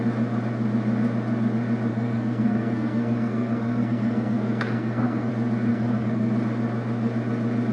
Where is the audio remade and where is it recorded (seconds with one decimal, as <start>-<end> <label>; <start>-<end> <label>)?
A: 0.0-1.9 recorded; 1.9-5.3 remade; 5.3-5.7 recorded; 5.7-6.3 remade; 6.3-7.7 recorded